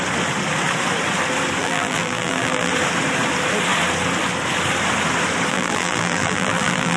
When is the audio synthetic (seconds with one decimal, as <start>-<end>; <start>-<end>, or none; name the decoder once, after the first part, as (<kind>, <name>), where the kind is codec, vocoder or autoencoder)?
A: 1.6-2.7 (vocoder, BigVGAN v2); 5.5-7.0